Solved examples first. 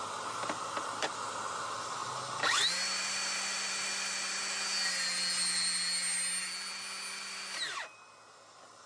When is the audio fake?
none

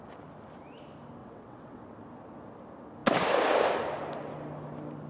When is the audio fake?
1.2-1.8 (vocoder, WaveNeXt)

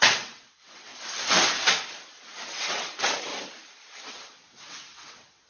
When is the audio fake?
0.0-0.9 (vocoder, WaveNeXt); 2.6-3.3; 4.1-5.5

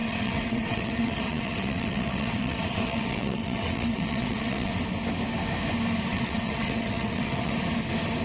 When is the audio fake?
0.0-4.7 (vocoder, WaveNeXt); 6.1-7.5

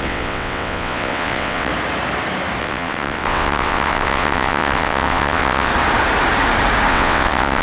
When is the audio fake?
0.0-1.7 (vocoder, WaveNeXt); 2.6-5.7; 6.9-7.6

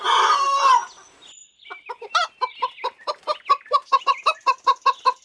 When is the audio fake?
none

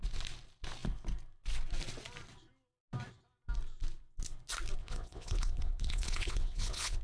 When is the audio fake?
4.8-7.0 (vocoder, WaveNeXt)

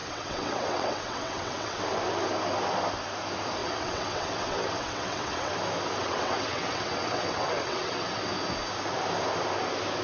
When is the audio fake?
0.0-1.8 (vocoder, WaveNeXt); 3.6-5.5; 6.0-8.3